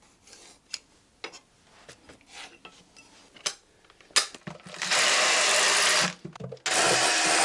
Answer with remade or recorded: recorded